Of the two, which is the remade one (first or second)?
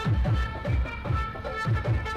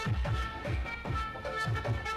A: second